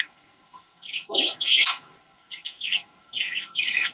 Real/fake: fake